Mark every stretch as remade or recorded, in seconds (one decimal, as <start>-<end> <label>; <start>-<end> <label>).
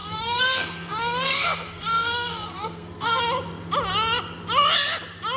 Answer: 0.0-3.2 remade; 3.2-5.4 recorded